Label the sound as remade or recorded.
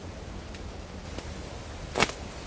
recorded